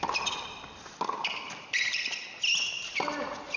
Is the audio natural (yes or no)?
yes